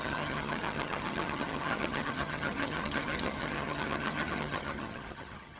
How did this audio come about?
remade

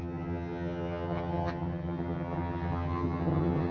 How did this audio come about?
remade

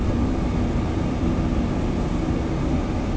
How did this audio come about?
recorded